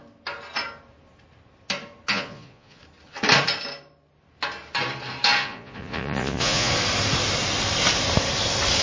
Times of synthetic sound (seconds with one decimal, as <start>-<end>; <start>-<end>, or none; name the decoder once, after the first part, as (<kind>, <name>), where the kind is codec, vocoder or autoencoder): 2.1-2.8 (vocoder, Vocos); 5.4-6.7